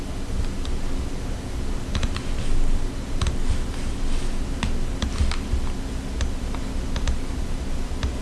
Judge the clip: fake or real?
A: real